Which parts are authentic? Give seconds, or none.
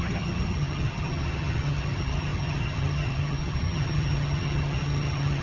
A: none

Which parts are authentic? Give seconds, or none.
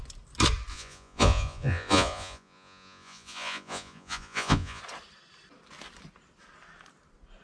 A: 0.0-0.7; 4.8-7.4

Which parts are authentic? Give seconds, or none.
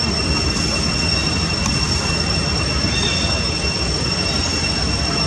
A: 0.0-5.3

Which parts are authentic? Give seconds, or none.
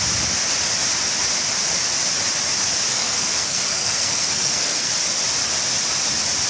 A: 0.0-2.9; 4.9-6.5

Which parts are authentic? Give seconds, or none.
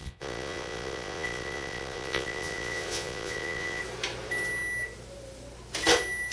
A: 3.8-6.3